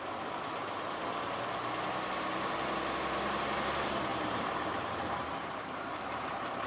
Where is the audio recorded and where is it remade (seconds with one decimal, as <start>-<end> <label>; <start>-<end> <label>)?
0.0-4.1 recorded; 4.1-6.7 remade